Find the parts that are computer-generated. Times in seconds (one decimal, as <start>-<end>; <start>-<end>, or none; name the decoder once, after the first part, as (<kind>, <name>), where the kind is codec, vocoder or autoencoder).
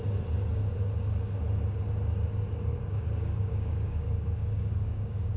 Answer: 0.6-1.4 (codec, DAC); 2.7-5.4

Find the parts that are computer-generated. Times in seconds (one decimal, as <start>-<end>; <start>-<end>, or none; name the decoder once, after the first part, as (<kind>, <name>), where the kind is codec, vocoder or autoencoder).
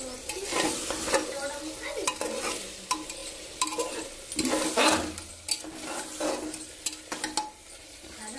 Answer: 7.6-8.4 (vocoder, BigVGAN v2)